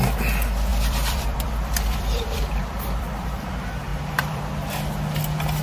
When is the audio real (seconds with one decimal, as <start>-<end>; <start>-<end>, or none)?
0.0-0.7; 3.5-3.9; 4.5-5.6